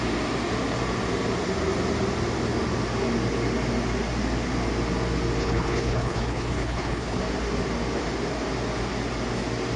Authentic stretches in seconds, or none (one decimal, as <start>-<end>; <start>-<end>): 0.0-5.4; 7.2-9.8